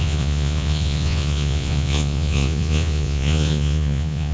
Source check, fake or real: fake